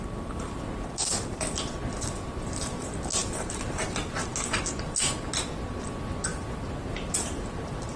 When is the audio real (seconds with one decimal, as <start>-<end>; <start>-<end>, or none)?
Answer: 0.0-8.0